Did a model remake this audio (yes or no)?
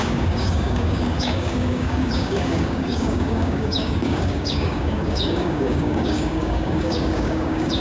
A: yes